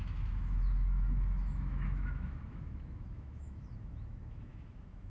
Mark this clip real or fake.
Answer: fake